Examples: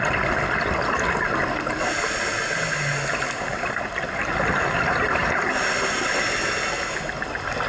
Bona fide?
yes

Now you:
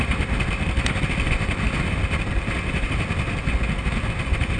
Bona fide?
yes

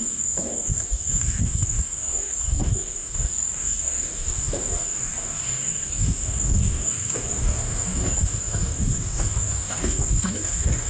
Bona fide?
no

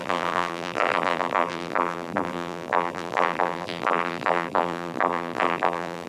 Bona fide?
no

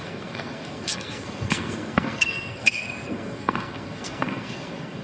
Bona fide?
no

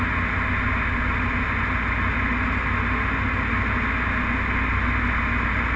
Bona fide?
yes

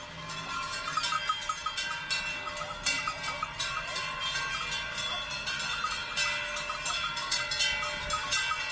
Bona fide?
yes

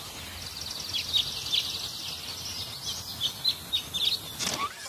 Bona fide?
yes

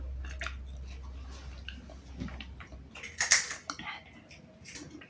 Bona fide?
yes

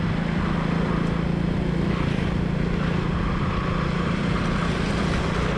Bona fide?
yes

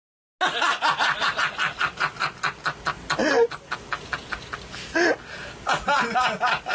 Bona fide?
yes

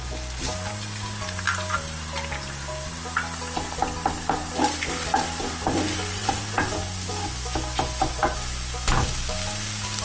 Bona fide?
yes